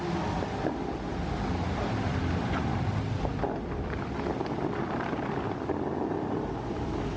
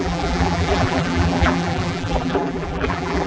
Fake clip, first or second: second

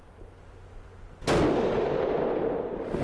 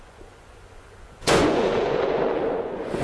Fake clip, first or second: second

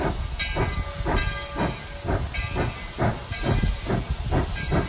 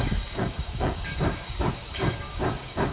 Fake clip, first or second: second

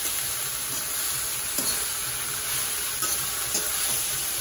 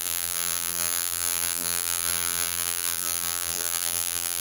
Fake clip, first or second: second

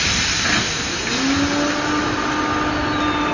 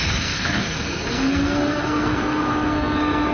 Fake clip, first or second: second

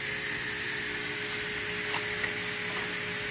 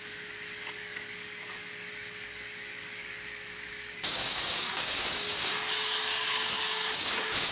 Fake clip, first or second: second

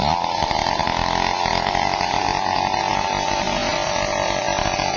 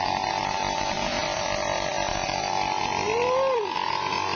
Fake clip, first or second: second